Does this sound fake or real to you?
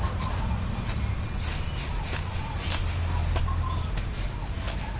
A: real